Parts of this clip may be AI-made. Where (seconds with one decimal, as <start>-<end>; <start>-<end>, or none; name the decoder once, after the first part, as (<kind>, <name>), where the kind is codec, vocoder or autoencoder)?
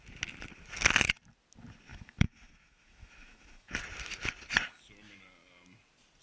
1.9-3.7 (autoencoder, DAC-VAE)